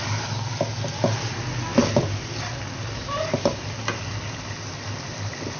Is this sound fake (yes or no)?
no